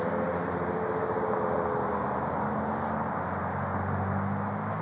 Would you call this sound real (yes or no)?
yes